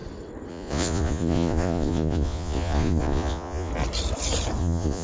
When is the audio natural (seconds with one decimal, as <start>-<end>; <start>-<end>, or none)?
0.0-0.5; 3.7-4.6